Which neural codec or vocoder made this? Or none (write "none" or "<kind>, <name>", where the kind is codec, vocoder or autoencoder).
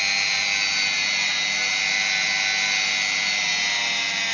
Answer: none